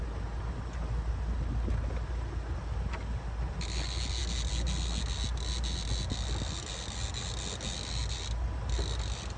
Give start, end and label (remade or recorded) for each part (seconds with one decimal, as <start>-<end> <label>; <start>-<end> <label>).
0.0-9.4 recorded